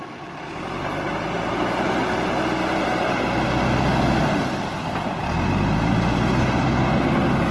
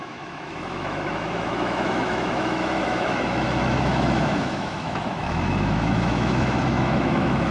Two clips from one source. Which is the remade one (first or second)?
second